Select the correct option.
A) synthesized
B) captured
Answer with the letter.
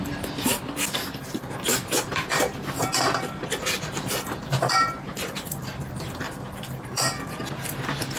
A